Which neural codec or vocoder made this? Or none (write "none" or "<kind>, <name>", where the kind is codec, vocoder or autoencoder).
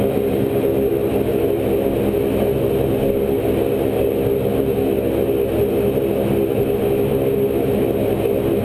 none